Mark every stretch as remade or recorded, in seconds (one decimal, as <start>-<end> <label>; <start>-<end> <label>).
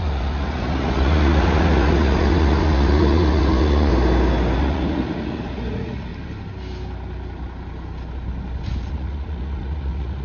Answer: 0.0-3.9 remade; 3.9-4.6 recorded; 4.6-6.1 remade; 6.1-8.9 recorded; 8.9-10.2 remade